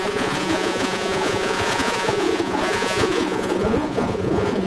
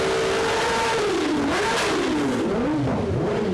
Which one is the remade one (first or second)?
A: first